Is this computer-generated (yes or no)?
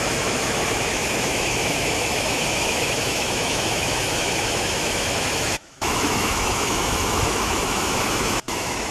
yes